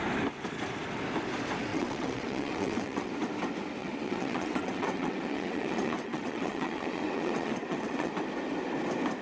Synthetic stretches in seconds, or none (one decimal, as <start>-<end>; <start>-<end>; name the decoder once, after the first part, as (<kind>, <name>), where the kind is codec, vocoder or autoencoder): 1.7-3.1 (vocoder, WaveNeXt); 3.8-8.1